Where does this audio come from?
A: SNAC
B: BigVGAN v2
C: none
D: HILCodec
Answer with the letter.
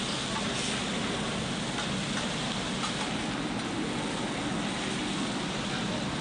C